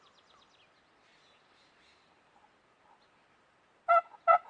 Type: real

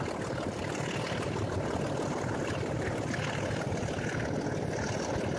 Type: real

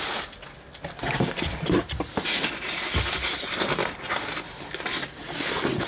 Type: real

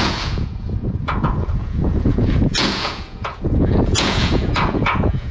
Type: fake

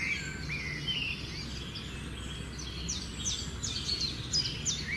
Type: real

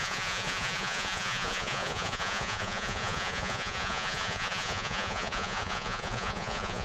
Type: fake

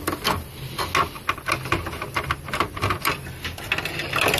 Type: real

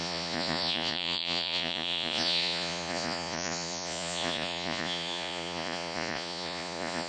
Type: fake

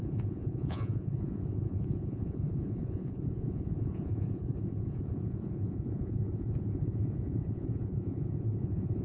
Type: fake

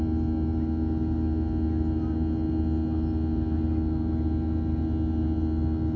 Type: real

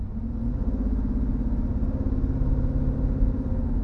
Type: real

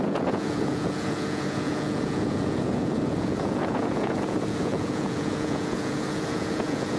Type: fake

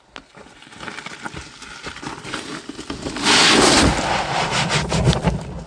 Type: real